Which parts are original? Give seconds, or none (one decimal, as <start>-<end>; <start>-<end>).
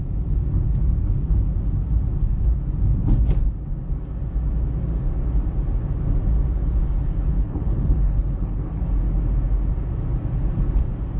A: 0.0-7.3; 8.8-11.2